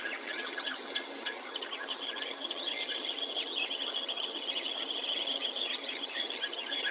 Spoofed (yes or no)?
yes